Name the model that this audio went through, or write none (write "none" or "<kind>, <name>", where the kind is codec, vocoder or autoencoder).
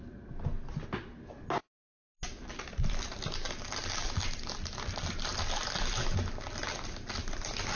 none